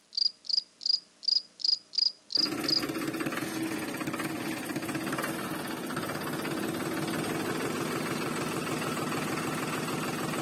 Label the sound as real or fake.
real